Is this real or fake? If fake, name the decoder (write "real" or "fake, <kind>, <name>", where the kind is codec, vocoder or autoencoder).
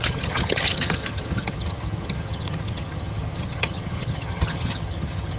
fake, vocoder, HiFi-GAN